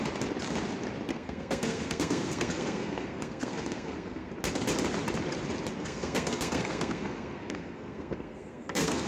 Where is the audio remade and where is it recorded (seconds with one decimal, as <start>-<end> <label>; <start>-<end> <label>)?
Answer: 0.0-1.1 recorded; 1.1-4.3 remade; 4.3-5.8 recorded; 5.8-9.1 remade